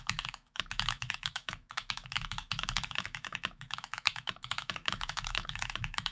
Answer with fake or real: fake